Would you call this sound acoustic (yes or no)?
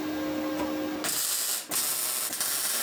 yes